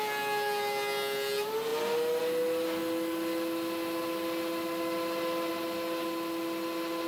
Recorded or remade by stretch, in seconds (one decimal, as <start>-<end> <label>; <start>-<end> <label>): 0.0-7.1 recorded